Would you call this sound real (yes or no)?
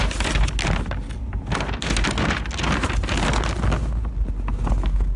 yes